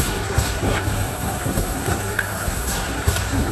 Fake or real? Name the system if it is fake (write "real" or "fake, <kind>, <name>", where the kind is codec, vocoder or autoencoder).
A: fake, codec, SNAC